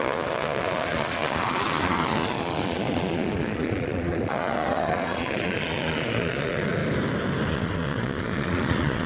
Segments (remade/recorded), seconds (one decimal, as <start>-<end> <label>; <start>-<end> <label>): 0.0-6.8 remade; 6.8-7.5 recorded; 7.5-9.1 remade